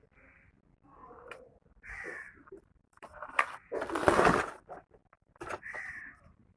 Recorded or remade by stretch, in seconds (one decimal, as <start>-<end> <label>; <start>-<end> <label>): 0.0-1.0 recorded; 1.0-4.1 remade; 4.1-5.0 recorded; 5.0-6.6 remade